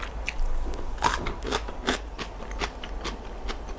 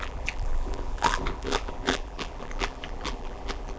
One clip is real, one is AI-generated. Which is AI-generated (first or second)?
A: second